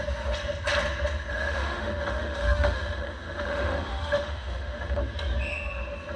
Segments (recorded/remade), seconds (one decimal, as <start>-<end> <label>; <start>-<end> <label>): 0.0-1.3 recorded; 1.3-5.0 remade; 5.0-6.2 recorded